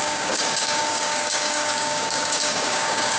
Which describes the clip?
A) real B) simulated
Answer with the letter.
B